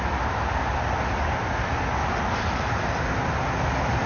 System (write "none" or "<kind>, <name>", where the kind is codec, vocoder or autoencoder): none